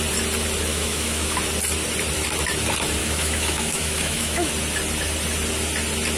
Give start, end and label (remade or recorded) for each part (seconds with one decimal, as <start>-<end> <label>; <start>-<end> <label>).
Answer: 0.0-0.7 recorded; 0.7-1.4 remade; 1.4-3.0 recorded; 3.0-4.5 remade; 4.5-6.2 recorded